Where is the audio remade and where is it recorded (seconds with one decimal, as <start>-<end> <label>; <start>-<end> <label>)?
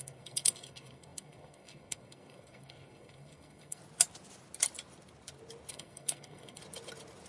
0.0-3.8 remade; 3.8-5.7 recorded; 5.7-6.6 remade; 6.6-7.3 recorded